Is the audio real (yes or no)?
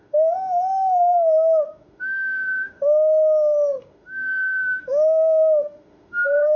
no